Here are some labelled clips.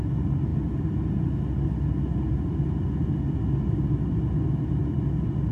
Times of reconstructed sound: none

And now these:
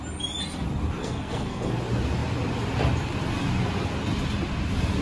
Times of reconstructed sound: 1.0-1.7 (codec, SNAC)

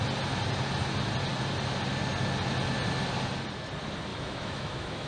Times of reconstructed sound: 4.1-5.1 (autoencoder, DAC-VAE)

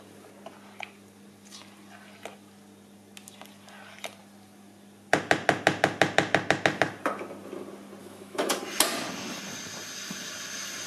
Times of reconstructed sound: 8.0-8.5 (autoencoder, DAC-VAE)

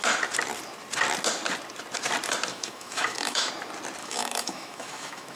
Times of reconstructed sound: 2.5-3.5 (autoencoder, DAC-VAE); 4.0-5.4

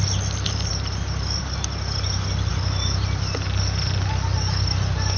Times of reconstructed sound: none